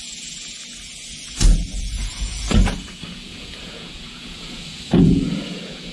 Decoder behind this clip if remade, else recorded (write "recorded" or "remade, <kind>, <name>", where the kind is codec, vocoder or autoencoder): remade, vocoder, Vocos